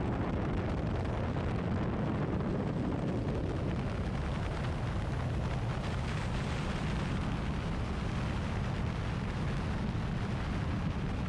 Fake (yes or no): no